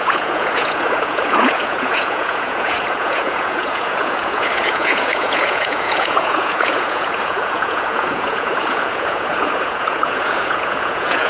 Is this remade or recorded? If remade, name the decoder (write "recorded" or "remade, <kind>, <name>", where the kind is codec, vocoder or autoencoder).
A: remade, vocoder, Vocos